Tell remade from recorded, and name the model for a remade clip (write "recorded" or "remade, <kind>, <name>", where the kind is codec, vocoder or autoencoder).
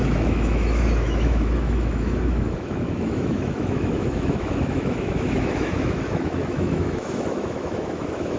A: remade, autoencoder, DAC-VAE